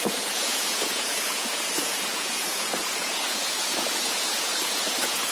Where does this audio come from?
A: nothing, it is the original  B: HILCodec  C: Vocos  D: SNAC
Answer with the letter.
C